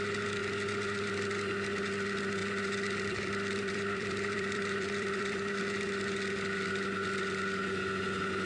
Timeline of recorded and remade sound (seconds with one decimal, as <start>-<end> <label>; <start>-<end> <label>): 0.0-2.4 recorded; 2.4-5.6 remade; 5.6-8.5 recorded